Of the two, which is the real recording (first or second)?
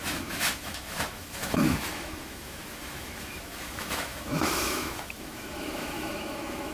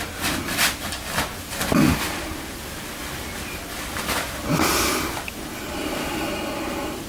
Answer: second